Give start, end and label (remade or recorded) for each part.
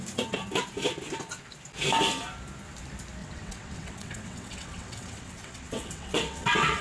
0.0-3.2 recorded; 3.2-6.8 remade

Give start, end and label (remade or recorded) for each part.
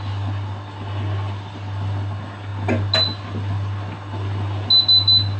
0.0-5.4 recorded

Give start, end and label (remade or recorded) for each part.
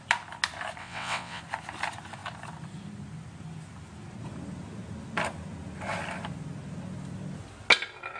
0.0-0.8 recorded; 0.8-1.4 remade; 1.4-8.2 recorded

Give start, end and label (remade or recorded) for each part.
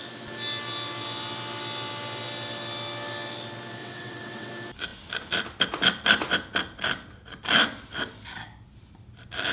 0.0-3.8 recorded; 3.8-4.5 remade; 4.5-9.5 recorded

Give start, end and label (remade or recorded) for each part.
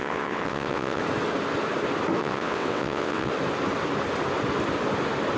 0.0-1.0 remade; 1.0-2.2 recorded; 2.2-3.3 remade; 3.3-5.4 recorded